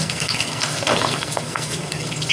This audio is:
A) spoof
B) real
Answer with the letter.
A